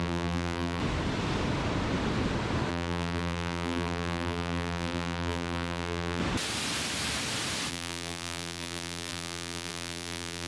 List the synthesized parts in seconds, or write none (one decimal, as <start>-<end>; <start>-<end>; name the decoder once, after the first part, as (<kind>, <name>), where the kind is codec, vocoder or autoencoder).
0.0-0.8 (vocoder, BigVGAN v2); 2.7-6.2; 7.7-10.5